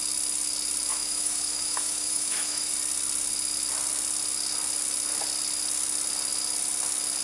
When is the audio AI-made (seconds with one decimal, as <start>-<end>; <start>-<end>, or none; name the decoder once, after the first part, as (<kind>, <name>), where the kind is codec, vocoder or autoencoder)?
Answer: 0.9-2.7 (autoencoder, DAC-VAE)